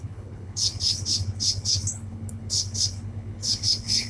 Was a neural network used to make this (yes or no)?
yes